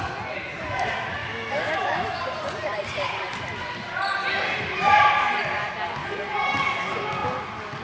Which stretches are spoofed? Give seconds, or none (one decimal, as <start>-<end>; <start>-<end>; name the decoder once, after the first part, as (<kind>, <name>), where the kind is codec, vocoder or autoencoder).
1.2-2.2 (autoencoder, DAC-VAE)